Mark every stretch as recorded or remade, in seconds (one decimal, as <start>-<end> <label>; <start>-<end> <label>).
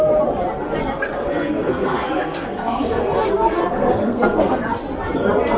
0.0-1.2 recorded; 1.2-4.6 remade; 4.6-5.6 recorded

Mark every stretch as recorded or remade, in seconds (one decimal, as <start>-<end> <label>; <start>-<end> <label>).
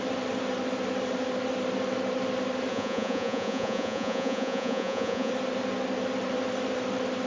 0.0-2.7 recorded; 2.7-5.3 remade; 5.3-7.3 recorded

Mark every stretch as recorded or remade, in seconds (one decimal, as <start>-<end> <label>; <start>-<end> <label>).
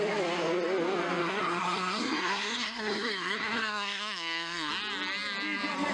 0.0-1.2 recorded; 1.2-4.7 remade; 4.7-5.9 recorded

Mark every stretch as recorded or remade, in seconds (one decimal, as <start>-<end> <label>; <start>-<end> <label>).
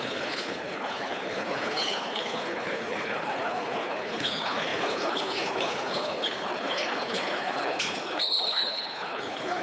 0.0-9.6 remade